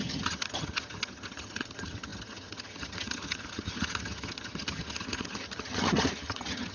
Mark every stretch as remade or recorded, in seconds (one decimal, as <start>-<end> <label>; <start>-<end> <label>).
0.0-6.7 remade